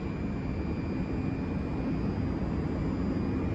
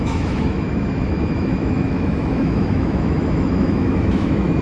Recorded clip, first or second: first